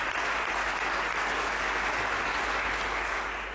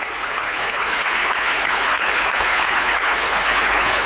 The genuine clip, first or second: first